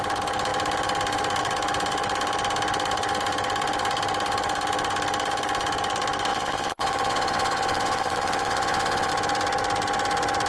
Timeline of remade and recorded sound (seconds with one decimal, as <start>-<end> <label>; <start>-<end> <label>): 0.0-6.3 recorded; 6.3-9.1 remade; 9.1-10.5 recorded